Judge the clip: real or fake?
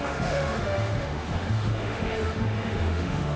fake